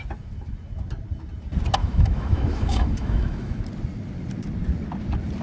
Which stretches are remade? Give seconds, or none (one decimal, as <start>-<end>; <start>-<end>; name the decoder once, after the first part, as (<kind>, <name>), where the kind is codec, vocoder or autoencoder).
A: 1.8-3.6 (autoencoder, DAC-VAE)